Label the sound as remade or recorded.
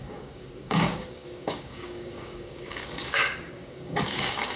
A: remade